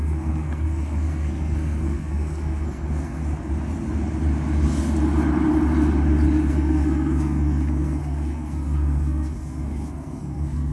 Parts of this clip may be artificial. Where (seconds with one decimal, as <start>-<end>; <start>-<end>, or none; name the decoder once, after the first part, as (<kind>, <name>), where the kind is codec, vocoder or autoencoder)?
0.0-3.2 (codec, SNAC); 6.5-10.7